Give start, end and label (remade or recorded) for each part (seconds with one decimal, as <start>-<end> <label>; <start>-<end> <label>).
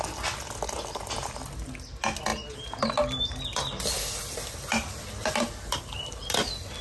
0.0-6.8 recorded